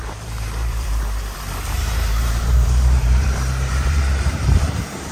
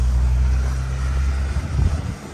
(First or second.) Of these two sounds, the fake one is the first